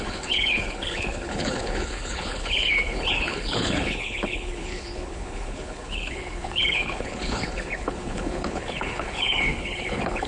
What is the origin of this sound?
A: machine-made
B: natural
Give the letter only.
A